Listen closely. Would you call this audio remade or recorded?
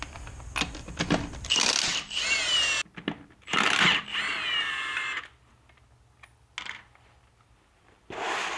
recorded